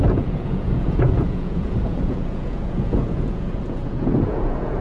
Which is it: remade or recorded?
remade